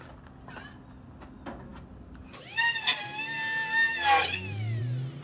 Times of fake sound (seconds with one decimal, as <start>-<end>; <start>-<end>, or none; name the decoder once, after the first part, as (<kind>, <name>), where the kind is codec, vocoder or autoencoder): none